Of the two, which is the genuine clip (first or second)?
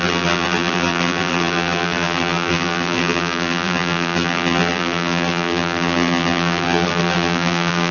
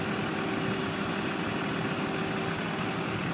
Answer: second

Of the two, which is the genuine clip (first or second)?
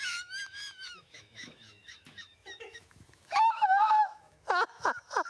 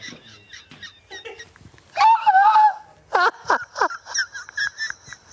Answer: second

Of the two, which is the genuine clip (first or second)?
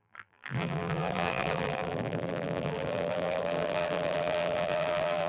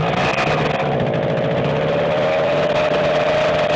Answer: second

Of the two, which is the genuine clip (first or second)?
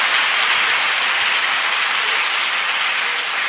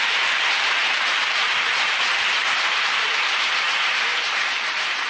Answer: first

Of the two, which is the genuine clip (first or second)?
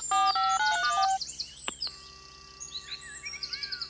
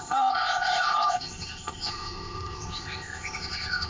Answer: first